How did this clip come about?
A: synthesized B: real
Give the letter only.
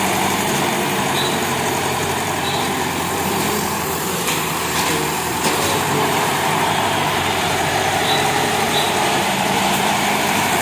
A